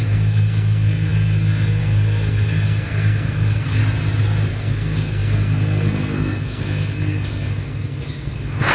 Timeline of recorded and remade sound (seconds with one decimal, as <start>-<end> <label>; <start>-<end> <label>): 0.0-3.8 remade; 3.8-4.5 recorded; 4.5-8.7 remade